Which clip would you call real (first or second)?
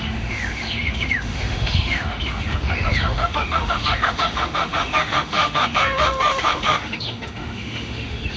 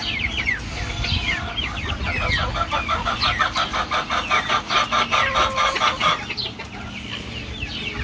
second